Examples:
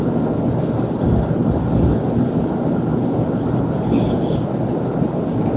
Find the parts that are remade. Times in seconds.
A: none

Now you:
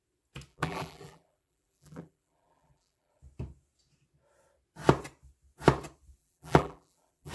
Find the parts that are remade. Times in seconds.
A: 0.5-3.2 (vocoder, BigVGAN v2); 6.2-7.3

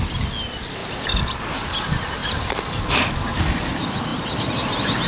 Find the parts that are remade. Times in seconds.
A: 0.8-1.4 (vocoder, BigVGAN v2)

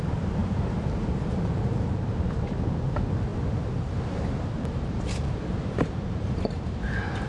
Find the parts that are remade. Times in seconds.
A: 0.0-7.3 (vocoder, BigVGAN v2)

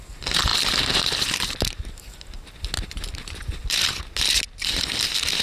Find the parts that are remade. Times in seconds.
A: none

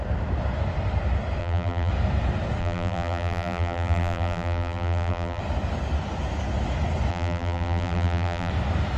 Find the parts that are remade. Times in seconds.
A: 1.4-1.9 (vocoder, BigVGAN v2); 2.6-5.4; 7.1-8.5